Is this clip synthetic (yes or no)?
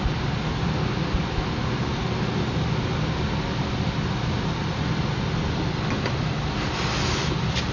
no